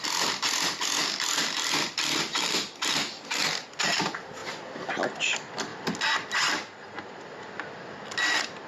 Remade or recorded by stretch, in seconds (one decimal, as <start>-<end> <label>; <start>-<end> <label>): 0.0-2.3 recorded; 2.3-3.4 remade; 3.4-8.7 recorded